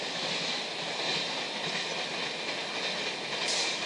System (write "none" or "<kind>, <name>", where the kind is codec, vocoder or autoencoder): none